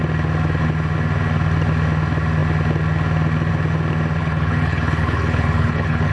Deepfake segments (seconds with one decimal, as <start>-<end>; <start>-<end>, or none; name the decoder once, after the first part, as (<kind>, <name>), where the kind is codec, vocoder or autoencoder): 4.2-6.1 (codec, HILCodec)

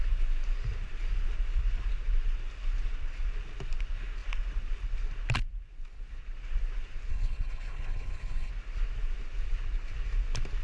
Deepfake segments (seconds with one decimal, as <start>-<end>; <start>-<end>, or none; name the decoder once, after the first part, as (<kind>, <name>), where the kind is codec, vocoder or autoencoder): 7.1-8.5 (codec, HILCodec)

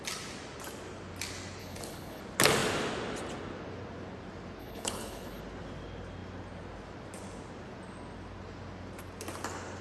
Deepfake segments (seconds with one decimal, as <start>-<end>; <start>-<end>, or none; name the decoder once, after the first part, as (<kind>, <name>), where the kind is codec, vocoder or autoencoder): 1.6-2.2 (codec, HILCodec); 4.6-5.4

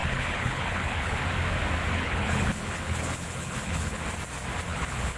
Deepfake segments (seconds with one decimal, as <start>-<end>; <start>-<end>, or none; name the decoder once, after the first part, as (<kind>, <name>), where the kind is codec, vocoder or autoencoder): 0.0-1.2 (codec, HILCodec); 1.9-4.0; 4.7-5.2

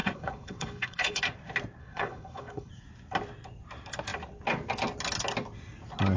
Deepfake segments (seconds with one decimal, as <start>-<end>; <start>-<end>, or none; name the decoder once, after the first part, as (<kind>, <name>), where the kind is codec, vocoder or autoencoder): 0.0-1.2 (codec, HILCodec); 1.8-2.7

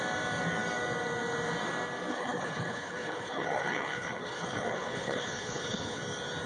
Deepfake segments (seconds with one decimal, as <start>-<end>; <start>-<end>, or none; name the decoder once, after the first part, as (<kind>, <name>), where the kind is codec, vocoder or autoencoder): 2.1-6.0 (codec, HILCodec)

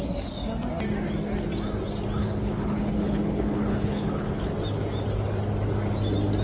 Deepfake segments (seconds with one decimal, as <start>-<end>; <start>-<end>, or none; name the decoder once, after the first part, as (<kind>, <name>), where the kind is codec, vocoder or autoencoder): 2.2-4.5 (codec, HILCodec)

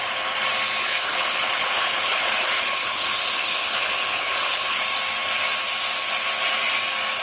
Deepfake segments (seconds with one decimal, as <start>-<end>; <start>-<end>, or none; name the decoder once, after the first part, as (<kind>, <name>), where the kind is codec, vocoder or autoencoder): 0.8-4.8 (codec, HILCodec)